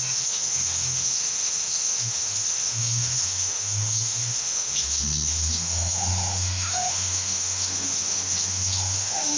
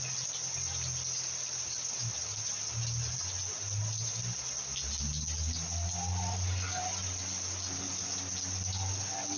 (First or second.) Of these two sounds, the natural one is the second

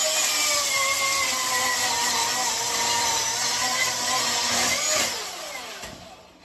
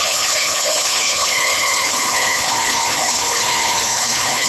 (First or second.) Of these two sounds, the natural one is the first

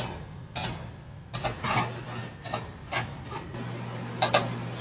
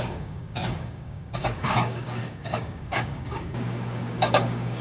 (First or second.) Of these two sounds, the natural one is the first